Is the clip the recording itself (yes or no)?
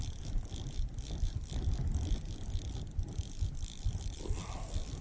yes